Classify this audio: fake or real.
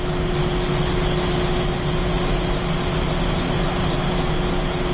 real